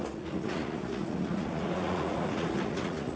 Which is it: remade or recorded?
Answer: remade